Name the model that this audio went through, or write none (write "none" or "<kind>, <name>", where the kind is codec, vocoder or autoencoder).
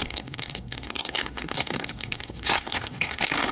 codec, SNAC